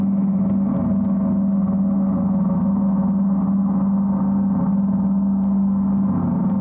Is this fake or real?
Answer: real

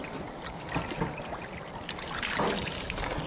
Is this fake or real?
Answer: real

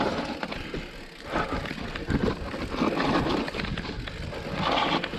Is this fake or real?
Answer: real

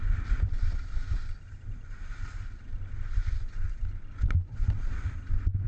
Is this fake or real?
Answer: real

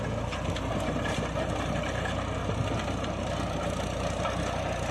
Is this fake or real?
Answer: real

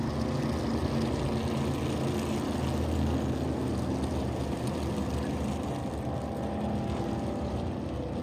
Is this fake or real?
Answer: real